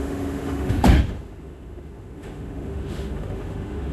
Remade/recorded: remade